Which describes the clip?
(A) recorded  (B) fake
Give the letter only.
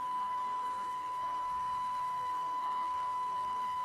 B